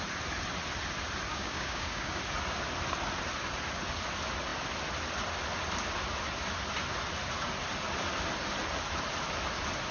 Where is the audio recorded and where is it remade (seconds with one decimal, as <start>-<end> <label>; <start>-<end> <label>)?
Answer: 0.0-1.3 recorded; 1.3-2.2 remade; 2.2-9.9 recorded